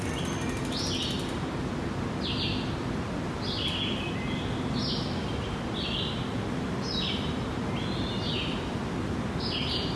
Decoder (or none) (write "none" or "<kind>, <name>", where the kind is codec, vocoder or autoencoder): none